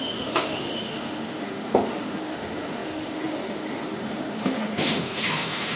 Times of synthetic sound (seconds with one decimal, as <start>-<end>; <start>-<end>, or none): 0.0-5.8